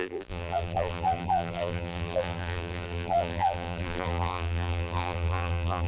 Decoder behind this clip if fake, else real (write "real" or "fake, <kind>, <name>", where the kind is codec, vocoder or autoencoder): fake, vocoder, BigVGAN v2